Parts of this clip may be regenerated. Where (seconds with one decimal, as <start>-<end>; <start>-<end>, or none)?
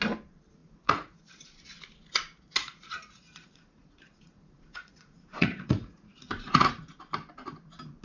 0.6-1.2; 2.6-6.8